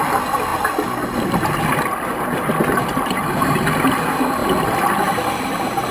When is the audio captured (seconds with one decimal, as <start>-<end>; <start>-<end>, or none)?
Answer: 0.0-5.9